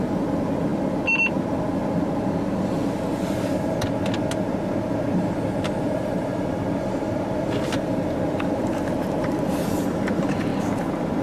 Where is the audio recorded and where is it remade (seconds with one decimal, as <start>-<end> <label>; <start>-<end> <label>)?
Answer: 0.0-0.7 remade; 0.7-1.4 recorded; 1.4-1.8 remade; 1.8-5.8 recorded; 5.8-10.5 remade; 10.5-11.2 recorded